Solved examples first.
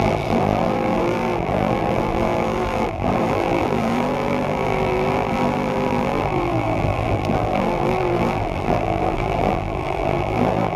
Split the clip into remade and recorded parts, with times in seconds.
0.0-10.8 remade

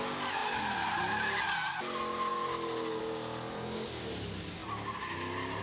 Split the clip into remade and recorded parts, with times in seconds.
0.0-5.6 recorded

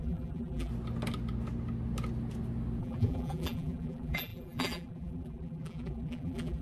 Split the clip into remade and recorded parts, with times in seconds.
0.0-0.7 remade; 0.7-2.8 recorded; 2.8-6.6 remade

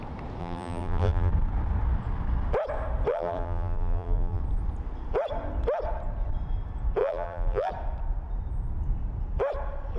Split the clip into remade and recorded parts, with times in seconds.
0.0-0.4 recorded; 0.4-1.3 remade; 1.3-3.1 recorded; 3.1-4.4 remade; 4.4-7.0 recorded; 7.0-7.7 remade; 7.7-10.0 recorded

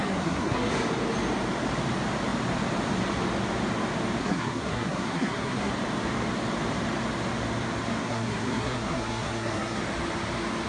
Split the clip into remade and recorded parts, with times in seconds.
0.0-0.7 remade; 0.7-4.2 recorded; 4.2-5.7 remade; 5.7-8.0 recorded; 8.0-9.8 remade; 9.8-10.7 recorded